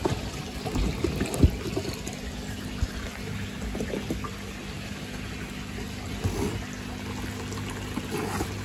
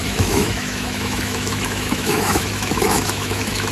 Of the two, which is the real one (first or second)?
first